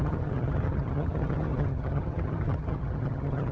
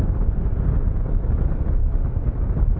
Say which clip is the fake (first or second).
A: first